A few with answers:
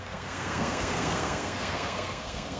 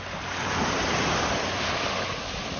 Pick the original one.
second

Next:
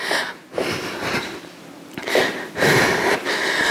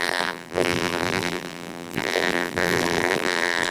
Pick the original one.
first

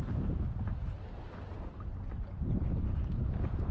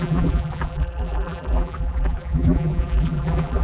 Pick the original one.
first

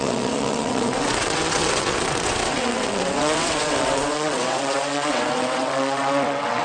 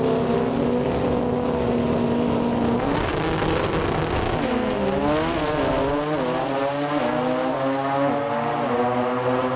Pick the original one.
second